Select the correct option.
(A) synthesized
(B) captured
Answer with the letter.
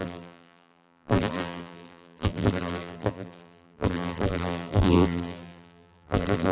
A